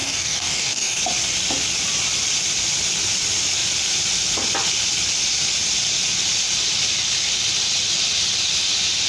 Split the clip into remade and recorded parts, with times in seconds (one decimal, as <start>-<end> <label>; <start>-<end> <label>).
0.0-1.0 remade; 1.0-9.1 recorded

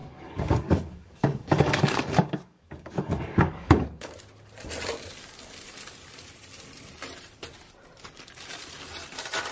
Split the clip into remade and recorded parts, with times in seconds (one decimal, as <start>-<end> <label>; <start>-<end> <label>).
0.0-4.1 remade; 4.1-9.5 recorded

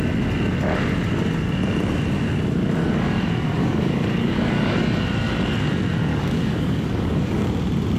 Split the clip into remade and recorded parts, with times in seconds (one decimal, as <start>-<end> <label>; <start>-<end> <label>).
0.0-3.6 recorded; 3.6-4.8 remade; 4.8-6.1 recorded; 6.1-7.5 remade; 7.5-8.0 recorded

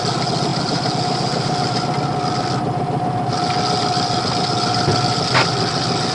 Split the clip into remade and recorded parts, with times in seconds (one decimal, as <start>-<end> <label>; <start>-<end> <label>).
0.0-6.1 recorded

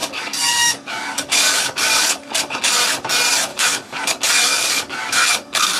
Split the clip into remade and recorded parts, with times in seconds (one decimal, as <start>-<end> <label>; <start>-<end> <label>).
0.0-2.7 remade; 2.7-3.5 recorded; 3.5-5.8 remade

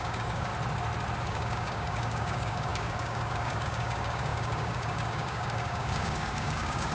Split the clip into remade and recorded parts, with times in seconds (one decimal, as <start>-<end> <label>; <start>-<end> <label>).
0.0-0.5 remade; 0.5-1.2 recorded; 1.2-6.9 remade